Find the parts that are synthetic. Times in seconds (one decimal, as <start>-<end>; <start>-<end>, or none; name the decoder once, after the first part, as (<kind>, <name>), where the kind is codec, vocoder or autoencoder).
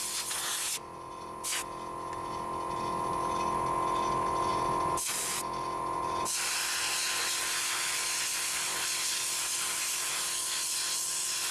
none